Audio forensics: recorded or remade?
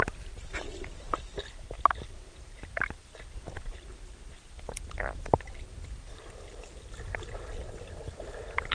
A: recorded